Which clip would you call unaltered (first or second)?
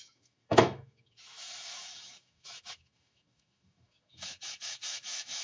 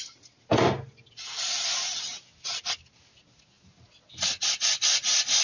second